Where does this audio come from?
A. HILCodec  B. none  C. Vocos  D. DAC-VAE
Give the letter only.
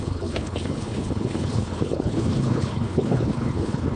A